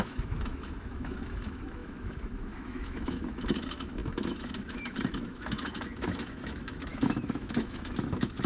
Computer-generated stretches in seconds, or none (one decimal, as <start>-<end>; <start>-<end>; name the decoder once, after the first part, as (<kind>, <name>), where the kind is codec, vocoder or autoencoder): 0.0-8.5 (autoencoder, DAC-VAE)